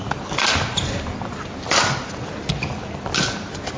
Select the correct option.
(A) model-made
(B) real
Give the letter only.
B